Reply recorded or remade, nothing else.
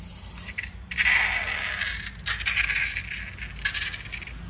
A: recorded